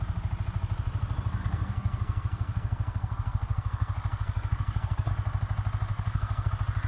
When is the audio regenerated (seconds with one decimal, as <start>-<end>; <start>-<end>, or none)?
1.4-5.1; 5.9-6.5